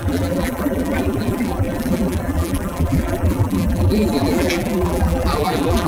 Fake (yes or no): yes